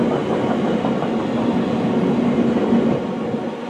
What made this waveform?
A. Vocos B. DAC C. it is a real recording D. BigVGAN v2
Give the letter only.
C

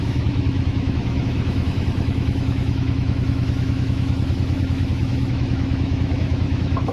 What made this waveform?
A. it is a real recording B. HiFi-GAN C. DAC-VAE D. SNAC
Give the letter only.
C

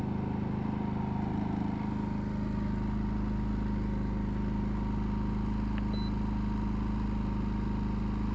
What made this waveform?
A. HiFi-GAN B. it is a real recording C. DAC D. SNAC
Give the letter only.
B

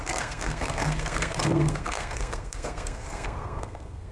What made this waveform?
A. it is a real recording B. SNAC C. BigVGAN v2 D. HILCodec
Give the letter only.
B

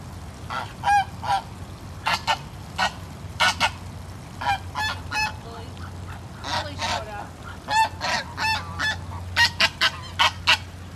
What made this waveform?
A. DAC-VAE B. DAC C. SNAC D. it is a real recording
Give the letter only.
D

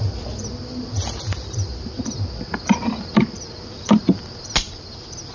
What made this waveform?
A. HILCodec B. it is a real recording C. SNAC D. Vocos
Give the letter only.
B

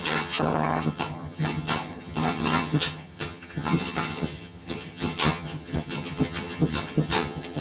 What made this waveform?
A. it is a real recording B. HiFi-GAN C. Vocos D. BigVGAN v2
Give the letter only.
B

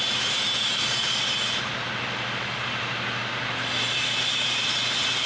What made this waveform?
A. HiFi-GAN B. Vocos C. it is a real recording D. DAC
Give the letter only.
C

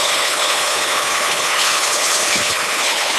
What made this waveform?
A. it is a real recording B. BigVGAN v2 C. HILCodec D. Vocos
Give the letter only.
C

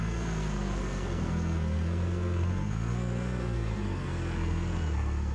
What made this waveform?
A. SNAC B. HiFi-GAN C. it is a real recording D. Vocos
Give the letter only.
A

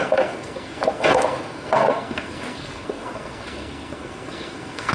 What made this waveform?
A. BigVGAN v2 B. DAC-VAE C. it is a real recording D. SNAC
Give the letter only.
D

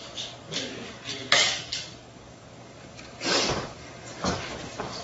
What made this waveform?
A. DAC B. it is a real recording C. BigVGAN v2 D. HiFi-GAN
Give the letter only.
A